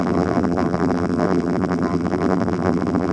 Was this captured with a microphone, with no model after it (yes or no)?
no